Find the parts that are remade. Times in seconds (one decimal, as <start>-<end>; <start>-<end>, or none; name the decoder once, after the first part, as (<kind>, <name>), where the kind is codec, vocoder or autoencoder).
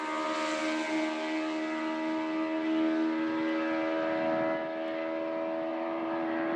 5.7-6.6 (vocoder, BigVGAN v2)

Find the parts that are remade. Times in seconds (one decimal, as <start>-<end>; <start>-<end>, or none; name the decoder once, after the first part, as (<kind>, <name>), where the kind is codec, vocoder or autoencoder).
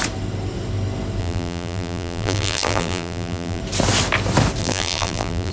1.2-3.6 (vocoder, BigVGAN v2); 4.6-5.5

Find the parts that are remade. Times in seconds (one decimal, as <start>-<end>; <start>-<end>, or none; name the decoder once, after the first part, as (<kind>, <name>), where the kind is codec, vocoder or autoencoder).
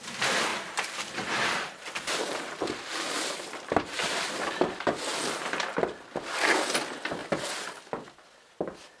0.5-4.6 (vocoder, BigVGAN v2); 5.1-5.9; 7.2-7.8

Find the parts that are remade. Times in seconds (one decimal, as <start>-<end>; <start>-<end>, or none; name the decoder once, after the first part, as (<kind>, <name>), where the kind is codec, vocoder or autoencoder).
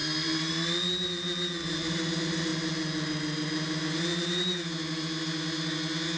0.0-0.5 (vocoder, BigVGAN v2)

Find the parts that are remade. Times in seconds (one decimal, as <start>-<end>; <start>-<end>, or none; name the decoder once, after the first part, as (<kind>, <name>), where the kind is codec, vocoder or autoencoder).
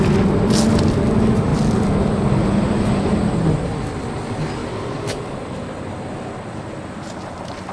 6.5-7.7 (vocoder, BigVGAN v2)